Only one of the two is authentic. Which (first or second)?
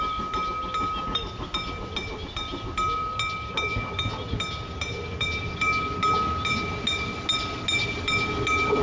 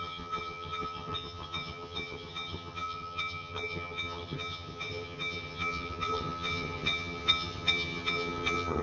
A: first